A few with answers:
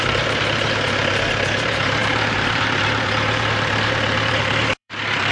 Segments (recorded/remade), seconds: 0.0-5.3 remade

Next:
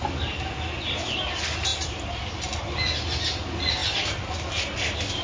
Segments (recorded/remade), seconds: 0.0-5.2 recorded

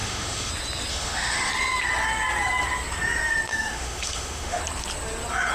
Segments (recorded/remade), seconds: 0.0-0.5 remade; 0.5-0.9 recorded; 0.9-1.5 remade; 1.5-3.5 recorded; 3.5-4.6 remade; 4.6-5.5 recorded

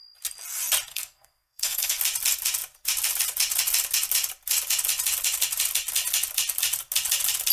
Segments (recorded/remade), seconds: 0.0-0.9 recorded; 0.9-2.0 remade; 2.0-7.5 recorded

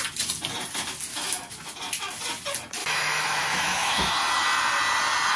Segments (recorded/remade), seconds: 0.0-1.1 recorded; 1.1-1.6 remade; 1.6-2.8 recorded; 2.8-4.1 remade; 4.1-5.4 recorded

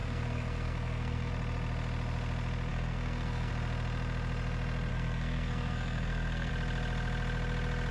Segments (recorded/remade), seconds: 0.0-1.3 remade; 1.3-2.7 recorded; 2.7-3.5 remade; 3.5-4.9 recorded; 4.9-6.5 remade; 6.5-7.9 recorded